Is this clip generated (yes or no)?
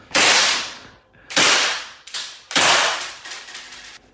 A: no